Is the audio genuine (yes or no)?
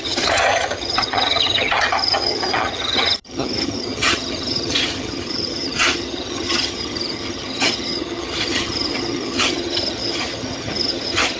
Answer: no